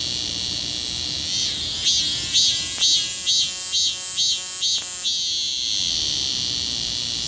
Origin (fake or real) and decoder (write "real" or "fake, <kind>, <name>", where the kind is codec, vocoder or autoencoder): real